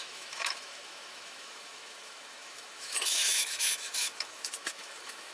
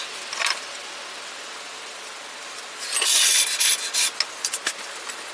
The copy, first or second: first